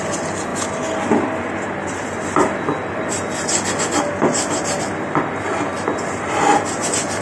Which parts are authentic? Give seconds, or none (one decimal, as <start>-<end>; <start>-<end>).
0.0-7.2